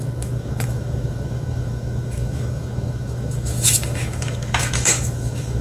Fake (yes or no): yes